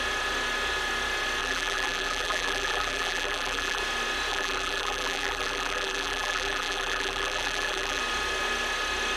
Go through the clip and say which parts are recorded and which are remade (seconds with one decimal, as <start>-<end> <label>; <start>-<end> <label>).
0.0-1.4 recorded; 1.4-3.8 remade; 3.8-4.3 recorded; 4.3-8.0 remade; 8.0-9.2 recorded